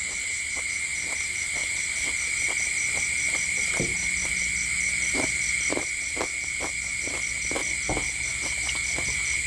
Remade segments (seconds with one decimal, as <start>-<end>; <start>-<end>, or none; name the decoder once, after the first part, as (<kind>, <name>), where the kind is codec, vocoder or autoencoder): none